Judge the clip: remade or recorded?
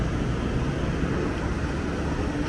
recorded